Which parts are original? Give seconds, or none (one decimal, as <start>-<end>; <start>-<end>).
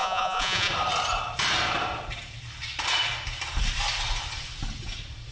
0.7-5.3